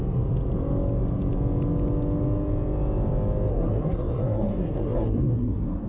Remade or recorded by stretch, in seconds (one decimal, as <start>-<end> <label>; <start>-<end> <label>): 0.0-3.5 recorded; 3.5-5.9 remade